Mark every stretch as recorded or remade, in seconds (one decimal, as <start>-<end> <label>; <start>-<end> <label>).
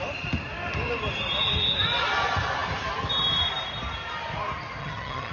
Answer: 0.0-4.8 recorded; 4.8-5.3 remade